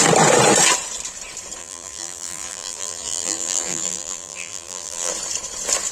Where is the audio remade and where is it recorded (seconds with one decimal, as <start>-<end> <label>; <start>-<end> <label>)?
0.0-1.6 recorded; 1.6-5.1 remade; 5.1-5.9 recorded